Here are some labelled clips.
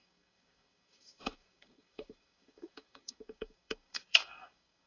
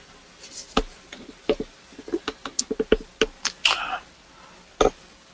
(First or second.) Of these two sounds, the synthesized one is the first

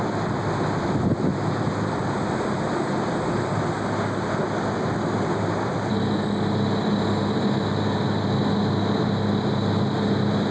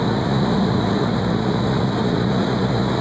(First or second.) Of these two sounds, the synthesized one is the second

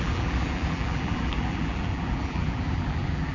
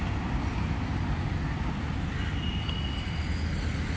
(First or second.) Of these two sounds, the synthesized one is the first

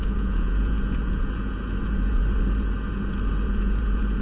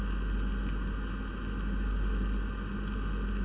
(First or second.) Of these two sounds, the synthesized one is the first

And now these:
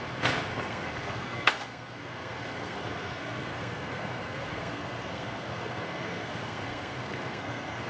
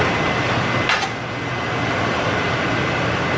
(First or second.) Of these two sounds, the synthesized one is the first